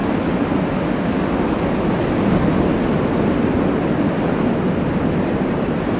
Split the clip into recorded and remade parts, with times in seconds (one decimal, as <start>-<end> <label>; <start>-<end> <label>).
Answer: 0.0-6.0 recorded